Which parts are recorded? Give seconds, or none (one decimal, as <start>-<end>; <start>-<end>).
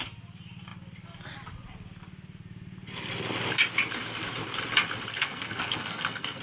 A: 0.0-5.1